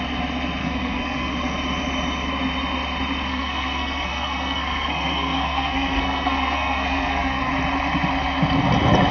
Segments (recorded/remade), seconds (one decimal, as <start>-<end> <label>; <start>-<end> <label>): 0.0-0.6 recorded; 0.6-1.3 remade; 1.3-3.3 recorded; 3.3-7.5 remade; 7.5-9.1 recorded